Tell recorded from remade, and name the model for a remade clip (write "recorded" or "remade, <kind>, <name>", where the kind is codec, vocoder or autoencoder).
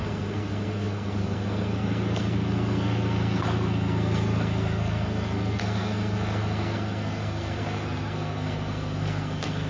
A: remade, codec, SNAC